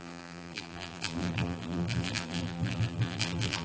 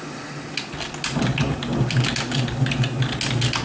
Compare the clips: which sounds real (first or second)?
second